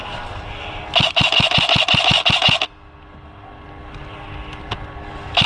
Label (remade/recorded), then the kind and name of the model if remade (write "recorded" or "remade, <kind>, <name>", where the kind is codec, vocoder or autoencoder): recorded